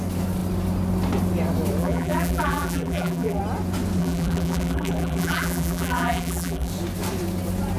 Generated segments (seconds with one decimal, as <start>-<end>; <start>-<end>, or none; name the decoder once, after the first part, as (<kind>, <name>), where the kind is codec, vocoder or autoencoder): 1.8-3.4 (vocoder, BigVGAN v2); 4.0-6.7